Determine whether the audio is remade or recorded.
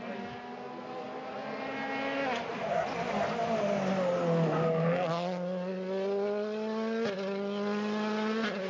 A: recorded